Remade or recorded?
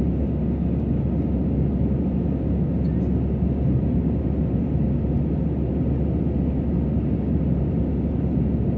recorded